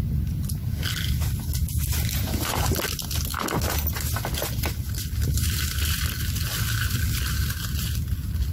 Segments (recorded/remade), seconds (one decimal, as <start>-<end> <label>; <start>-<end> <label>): 0.0-8.5 recorded